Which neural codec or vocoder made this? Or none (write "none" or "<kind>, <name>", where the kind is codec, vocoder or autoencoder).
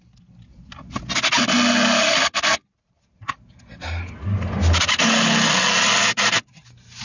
none